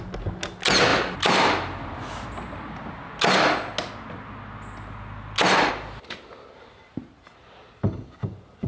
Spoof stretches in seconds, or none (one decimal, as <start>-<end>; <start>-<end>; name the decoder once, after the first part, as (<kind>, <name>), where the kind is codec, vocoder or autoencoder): none